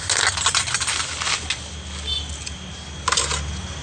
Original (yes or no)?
yes